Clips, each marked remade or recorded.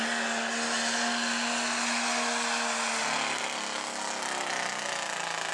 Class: recorded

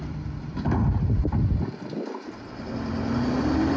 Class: recorded